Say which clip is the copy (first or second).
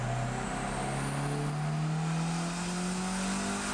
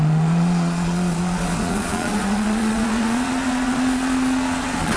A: second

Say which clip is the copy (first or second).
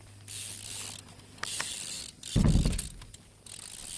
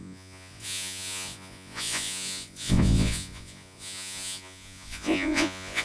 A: second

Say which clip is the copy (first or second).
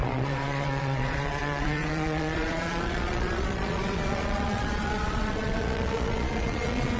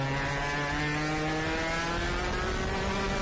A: first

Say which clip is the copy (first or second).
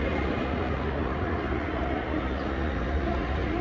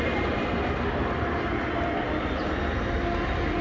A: first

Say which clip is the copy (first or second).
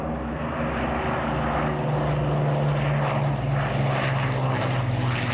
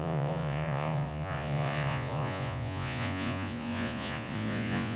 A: second